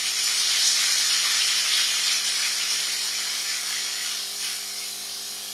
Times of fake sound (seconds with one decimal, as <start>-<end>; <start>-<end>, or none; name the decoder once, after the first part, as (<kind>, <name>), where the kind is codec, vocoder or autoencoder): 3.3-5.5 (codec, DAC)